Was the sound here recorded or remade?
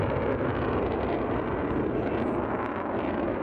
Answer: recorded